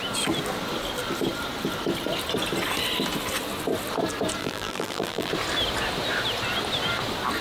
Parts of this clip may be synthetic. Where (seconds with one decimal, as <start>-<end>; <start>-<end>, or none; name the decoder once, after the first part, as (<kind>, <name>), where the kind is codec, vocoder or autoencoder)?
4.4-5.3 (vocoder, BigVGAN v2)